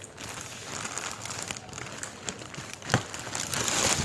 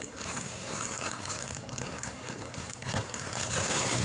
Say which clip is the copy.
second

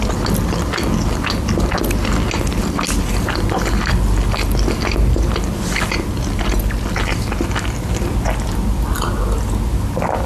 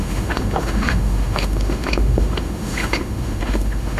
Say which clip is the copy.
second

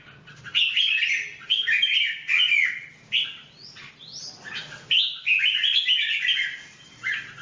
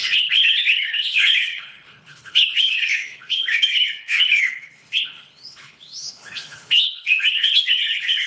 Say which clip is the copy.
second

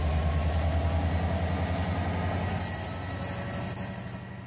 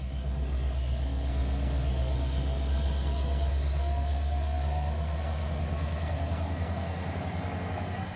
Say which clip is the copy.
second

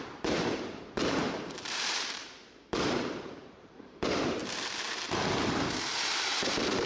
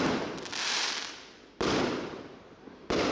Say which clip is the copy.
first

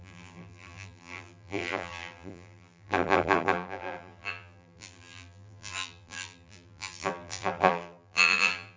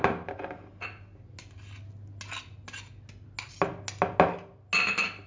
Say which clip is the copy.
first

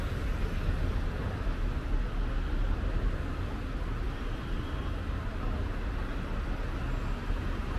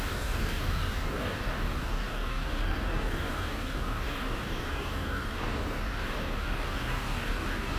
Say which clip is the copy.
second